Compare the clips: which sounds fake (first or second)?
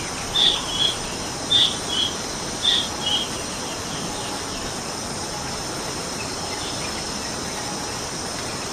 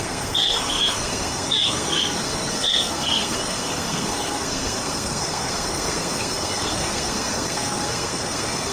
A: second